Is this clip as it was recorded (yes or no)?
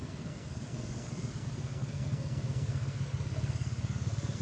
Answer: no